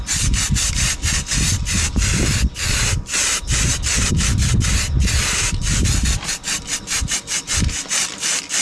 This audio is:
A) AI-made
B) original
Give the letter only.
B